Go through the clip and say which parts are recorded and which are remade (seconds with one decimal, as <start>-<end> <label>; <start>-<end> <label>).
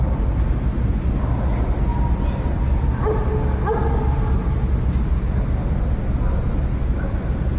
0.0-7.6 recorded